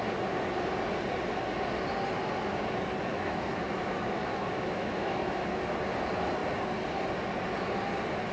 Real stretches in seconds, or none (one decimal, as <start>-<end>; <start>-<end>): 0.0-3.1; 5.7-8.3